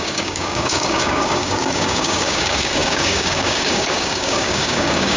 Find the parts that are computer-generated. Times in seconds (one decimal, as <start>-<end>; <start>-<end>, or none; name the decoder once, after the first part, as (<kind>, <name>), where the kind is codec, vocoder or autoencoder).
0.0-5.2 (codec, DAC)